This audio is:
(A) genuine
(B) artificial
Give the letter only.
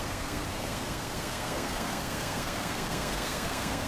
B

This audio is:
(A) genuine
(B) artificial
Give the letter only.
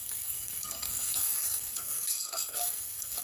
B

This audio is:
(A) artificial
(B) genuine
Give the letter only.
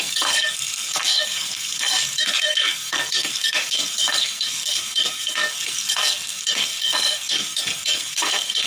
A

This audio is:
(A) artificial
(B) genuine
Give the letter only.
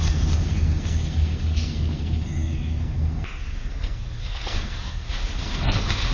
A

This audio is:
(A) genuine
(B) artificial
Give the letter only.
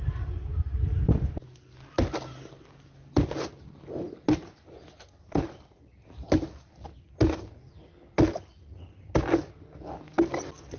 A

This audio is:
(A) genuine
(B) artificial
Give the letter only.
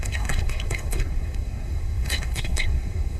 B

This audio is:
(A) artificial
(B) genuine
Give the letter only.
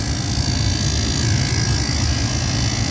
B